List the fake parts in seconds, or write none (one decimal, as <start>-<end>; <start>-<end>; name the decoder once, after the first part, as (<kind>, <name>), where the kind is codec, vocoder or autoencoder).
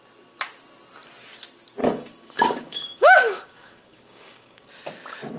1.8-4.7 (codec, DAC)